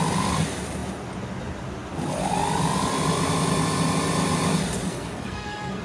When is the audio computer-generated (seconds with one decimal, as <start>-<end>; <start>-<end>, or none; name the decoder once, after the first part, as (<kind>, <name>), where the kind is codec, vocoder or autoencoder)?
4.9-5.8 (codec, SNAC)